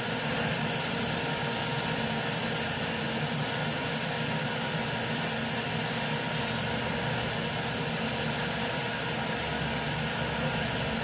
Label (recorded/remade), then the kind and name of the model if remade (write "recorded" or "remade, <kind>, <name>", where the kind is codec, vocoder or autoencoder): recorded